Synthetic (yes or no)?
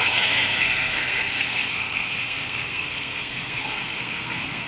yes